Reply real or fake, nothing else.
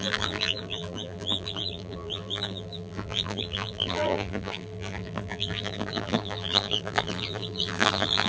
fake